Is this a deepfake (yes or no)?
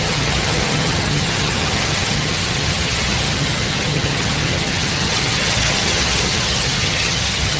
yes